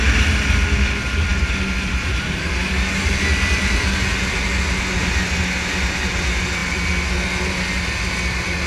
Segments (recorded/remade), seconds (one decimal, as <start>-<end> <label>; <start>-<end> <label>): 0.0-8.7 recorded